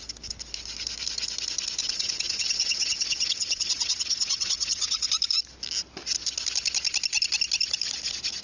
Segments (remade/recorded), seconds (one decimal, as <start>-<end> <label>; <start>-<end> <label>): 0.0-1.8 recorded; 1.8-5.1 remade; 5.1-8.4 recorded

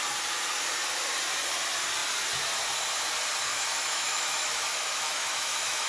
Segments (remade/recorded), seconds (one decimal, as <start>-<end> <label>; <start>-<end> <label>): 0.0-3.5 recorded; 3.5-5.9 remade

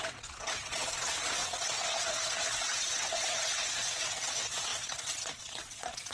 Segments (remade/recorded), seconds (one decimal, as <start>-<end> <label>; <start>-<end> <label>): 0.0-6.1 remade

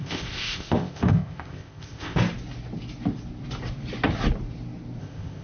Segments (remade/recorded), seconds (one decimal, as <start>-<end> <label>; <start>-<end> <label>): 0.0-2.2 remade; 2.2-5.0 recorded; 5.0-5.4 remade